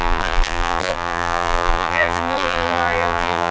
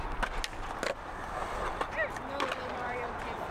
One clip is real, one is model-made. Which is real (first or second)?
second